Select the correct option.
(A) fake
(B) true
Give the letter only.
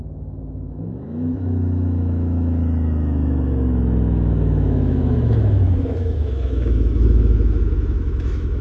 A